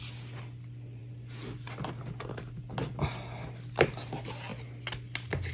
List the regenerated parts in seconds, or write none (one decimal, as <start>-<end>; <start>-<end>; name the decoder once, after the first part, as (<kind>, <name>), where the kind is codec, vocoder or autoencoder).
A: none